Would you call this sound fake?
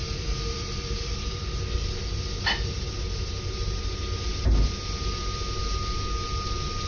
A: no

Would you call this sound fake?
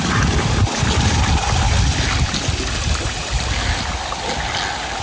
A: no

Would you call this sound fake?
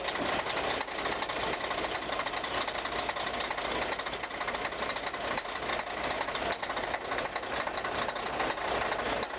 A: no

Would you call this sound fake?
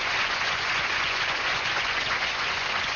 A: yes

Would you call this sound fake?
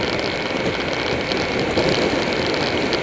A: no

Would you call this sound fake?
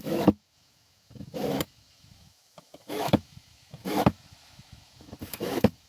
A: yes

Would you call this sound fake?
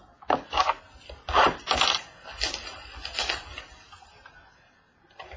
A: no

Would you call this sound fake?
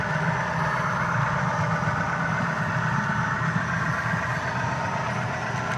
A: no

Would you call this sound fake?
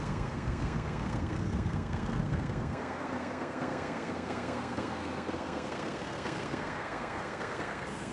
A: yes